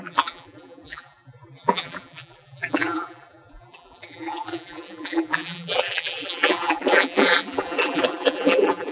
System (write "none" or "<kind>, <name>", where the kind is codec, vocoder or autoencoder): vocoder, BigVGAN v2